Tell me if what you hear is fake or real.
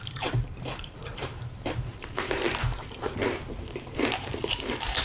fake